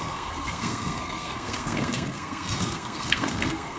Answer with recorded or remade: remade